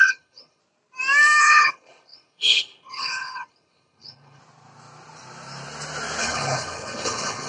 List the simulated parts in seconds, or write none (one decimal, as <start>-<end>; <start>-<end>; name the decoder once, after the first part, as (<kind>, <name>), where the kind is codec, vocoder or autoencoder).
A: 0.0-0.6 (codec, HILCodec); 1.4-4.4; 6.2-7.5